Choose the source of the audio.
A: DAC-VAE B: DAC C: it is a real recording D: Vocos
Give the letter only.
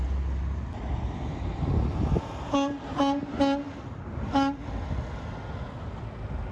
C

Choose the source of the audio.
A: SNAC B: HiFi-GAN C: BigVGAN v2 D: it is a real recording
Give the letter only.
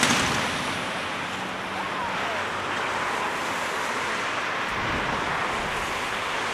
D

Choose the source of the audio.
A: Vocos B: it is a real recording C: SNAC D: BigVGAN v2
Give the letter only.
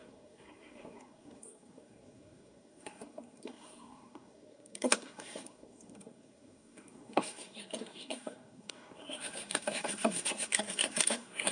C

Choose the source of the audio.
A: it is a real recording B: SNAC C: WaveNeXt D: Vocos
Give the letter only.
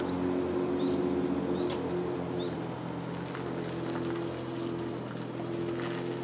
A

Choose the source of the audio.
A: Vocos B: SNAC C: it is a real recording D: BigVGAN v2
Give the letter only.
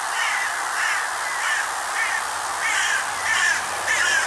C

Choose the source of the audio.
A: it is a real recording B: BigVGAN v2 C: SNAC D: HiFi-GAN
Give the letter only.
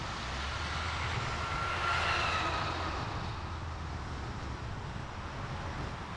A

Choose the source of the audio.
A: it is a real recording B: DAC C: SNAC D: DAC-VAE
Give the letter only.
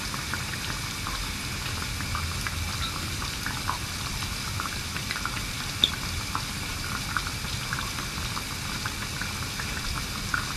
A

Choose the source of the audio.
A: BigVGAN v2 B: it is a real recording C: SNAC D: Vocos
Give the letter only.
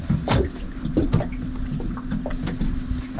B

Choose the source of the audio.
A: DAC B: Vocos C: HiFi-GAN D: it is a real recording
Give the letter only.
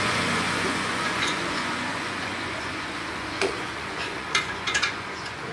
B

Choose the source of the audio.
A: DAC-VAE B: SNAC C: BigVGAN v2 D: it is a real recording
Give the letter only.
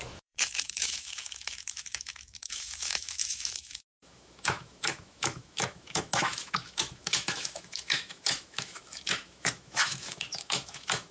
A